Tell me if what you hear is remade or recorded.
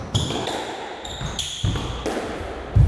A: recorded